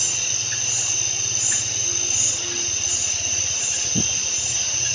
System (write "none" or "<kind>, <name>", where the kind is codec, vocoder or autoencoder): none